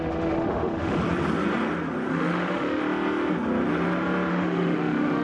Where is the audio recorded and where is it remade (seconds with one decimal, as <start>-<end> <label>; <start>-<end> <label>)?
0.0-1.0 remade; 1.0-2.1 recorded; 2.1-2.8 remade; 2.8-4.3 recorded; 4.3-5.2 remade